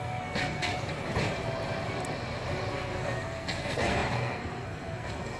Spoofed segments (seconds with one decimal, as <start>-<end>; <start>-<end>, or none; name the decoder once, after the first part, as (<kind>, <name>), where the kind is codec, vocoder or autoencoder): 0.0-0.7 (codec, SNAC); 2.7-5.4